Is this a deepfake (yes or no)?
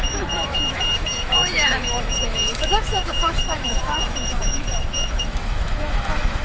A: yes